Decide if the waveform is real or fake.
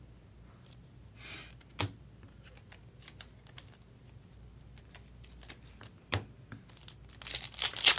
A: real